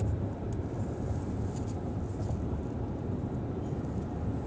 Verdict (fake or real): real